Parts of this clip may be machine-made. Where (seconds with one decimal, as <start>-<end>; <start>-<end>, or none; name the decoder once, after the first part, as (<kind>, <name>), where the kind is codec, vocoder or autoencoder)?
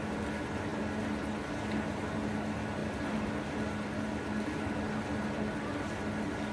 none